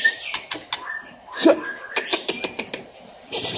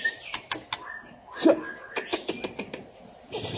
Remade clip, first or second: first